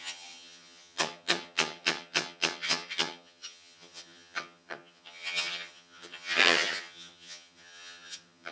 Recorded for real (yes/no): no